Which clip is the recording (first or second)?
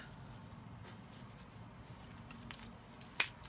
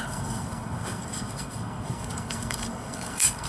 first